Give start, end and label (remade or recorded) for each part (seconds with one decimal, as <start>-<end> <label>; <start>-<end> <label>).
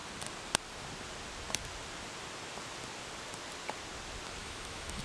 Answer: 0.0-4.4 recorded; 4.4-5.0 remade